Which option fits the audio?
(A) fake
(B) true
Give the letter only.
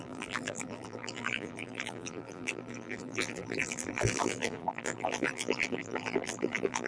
A